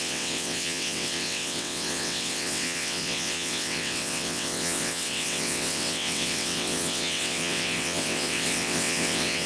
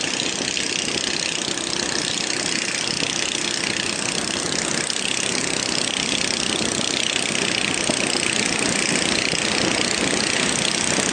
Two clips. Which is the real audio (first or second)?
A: second